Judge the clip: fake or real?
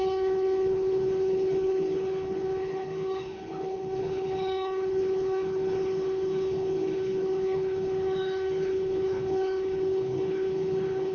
fake